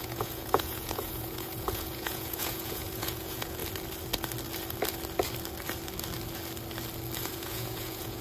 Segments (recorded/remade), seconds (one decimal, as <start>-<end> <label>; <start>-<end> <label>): 0.0-3.6 remade; 3.6-7.3 recorded; 7.3-8.2 remade